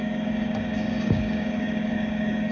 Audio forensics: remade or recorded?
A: remade